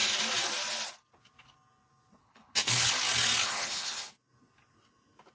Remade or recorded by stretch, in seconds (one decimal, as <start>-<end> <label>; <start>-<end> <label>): 0.0-2.2 recorded; 2.2-2.9 remade; 2.9-3.4 recorded; 3.4-4.1 remade; 4.1-5.3 recorded